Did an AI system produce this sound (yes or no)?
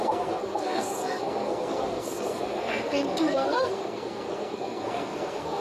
yes